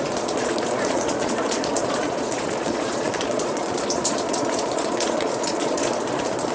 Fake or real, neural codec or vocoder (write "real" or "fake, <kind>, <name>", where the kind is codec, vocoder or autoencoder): fake, vocoder, Vocos